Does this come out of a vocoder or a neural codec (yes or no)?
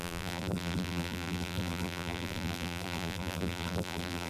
yes